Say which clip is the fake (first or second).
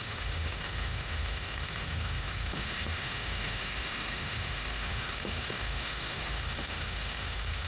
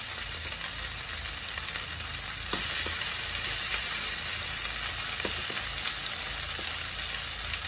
first